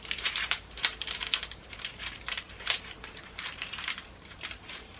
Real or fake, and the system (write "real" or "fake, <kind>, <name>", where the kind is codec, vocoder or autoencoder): fake, vocoder, BigVGAN v2